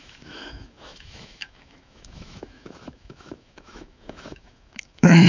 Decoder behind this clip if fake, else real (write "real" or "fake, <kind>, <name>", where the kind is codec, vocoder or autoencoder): fake, autoencoder, DAC-VAE